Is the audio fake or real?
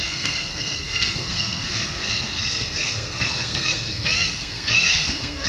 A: fake